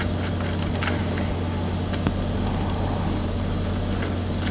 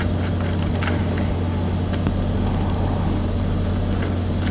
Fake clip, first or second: second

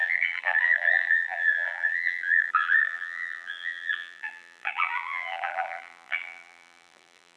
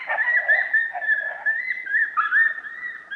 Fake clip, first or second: first